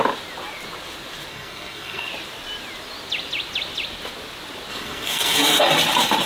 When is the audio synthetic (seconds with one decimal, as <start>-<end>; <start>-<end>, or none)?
1.3-2.1; 4.7-5.6